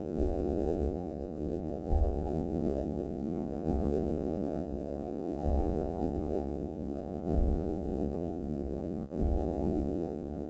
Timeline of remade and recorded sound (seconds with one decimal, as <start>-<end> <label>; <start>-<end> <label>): 0.0-10.5 remade